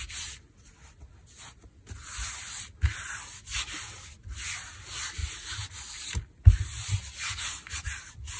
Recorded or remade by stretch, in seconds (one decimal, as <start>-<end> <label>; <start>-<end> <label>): 0.0-8.4 recorded